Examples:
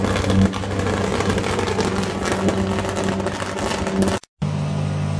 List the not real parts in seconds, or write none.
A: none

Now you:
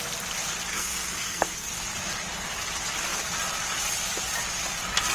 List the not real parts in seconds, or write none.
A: 0.7-1.7 (codec, SNAC)